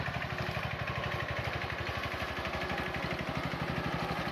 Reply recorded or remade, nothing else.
recorded